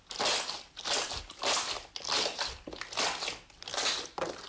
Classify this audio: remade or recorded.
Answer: recorded